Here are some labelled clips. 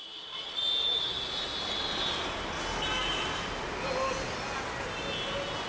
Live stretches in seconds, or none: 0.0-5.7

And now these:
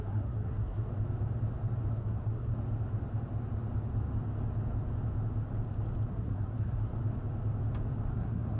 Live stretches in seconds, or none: 0.9-1.9; 2.5-6.1; 6.9-8.1

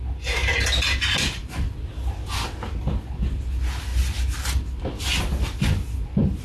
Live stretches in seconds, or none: 0.0-6.4

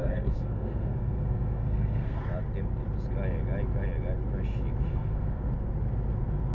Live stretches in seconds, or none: 2.2-4.9; 5.4-6.5

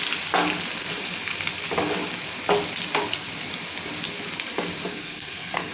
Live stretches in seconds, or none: 0.0-4.9

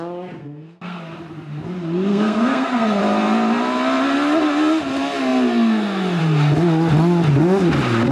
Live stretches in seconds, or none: 0.0-0.4; 1.0-2.1; 3.0-8.1